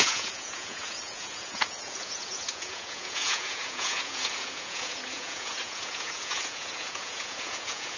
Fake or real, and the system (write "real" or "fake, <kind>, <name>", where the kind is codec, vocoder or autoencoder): fake, vocoder, Vocos